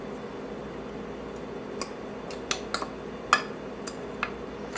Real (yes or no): yes